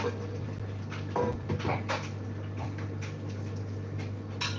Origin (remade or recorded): recorded